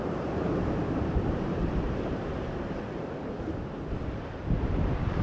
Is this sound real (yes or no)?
no